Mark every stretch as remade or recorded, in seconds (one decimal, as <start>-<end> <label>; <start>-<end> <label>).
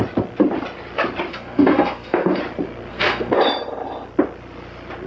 0.0-1.3 recorded; 1.3-2.4 remade; 2.4-2.9 recorded; 2.9-3.4 remade; 3.4-5.1 recorded